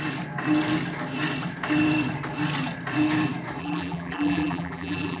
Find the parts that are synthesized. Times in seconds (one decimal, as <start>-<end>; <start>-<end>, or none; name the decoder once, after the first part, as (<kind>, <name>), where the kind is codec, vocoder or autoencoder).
3.6-5.2 (vocoder, BigVGAN v2)